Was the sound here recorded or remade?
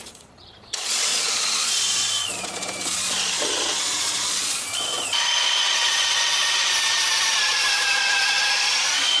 remade